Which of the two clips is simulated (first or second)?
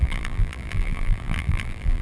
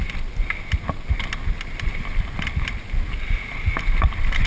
first